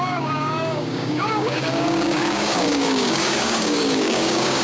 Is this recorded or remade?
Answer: remade